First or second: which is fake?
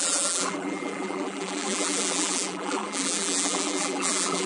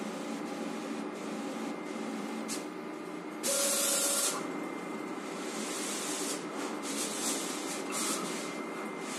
first